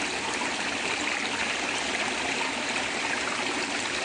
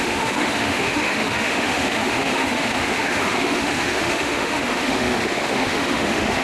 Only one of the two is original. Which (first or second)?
first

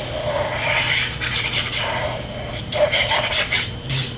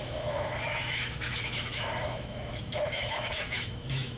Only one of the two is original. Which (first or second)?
first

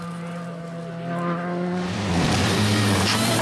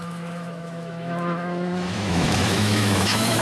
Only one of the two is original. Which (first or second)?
first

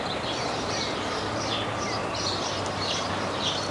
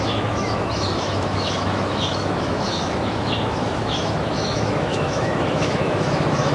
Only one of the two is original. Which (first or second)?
first